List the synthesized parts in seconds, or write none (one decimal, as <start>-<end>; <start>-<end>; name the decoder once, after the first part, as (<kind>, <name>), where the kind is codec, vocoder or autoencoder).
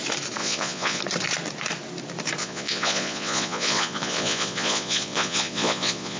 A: 0.4-1.0 (vocoder, Vocos); 2.4-6.2